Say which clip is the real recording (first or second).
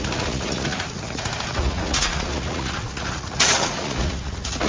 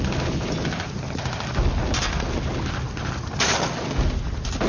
second